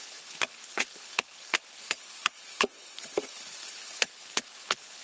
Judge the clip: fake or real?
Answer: fake